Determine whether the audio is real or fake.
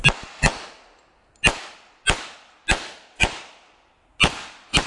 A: real